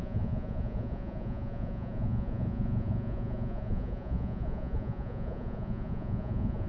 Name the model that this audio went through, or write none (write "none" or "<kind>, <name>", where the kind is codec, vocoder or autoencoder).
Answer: vocoder, Vocos